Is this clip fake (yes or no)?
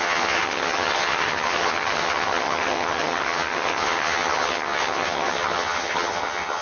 yes